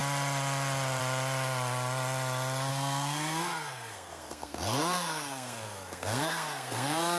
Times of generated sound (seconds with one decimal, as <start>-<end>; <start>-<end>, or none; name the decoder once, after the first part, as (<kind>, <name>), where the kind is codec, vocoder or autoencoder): 2.7-7.2 (codec, SNAC)